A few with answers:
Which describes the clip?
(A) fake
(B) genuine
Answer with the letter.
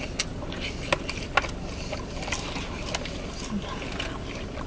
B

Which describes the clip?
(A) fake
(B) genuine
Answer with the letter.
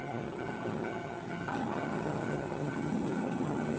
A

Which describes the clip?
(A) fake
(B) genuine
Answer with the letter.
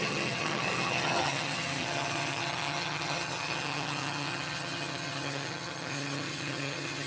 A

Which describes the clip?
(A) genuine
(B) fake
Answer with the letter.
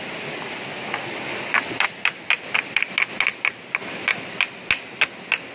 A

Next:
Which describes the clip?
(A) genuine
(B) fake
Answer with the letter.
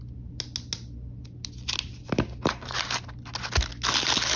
A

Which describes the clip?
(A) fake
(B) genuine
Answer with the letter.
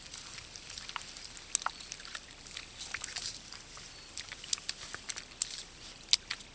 B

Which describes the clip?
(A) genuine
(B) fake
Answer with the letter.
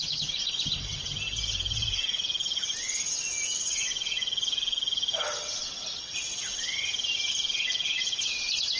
A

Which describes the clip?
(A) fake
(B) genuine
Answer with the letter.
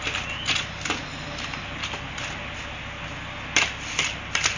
B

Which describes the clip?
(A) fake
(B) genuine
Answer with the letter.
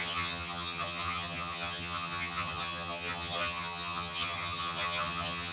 A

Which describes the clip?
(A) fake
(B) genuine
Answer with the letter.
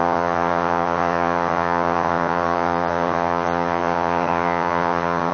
A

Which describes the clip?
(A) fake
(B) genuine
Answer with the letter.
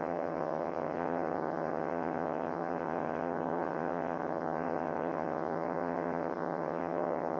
A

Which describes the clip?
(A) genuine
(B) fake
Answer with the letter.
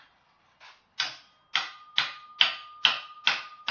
A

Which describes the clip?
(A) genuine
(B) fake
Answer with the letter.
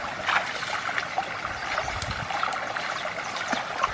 A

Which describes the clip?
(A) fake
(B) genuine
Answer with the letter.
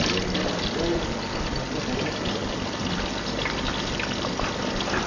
B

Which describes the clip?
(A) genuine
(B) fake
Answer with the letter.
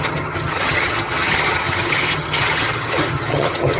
B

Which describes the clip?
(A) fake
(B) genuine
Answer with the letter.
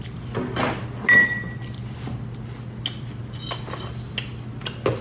B